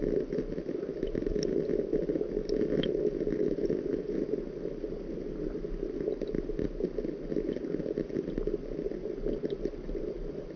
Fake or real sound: real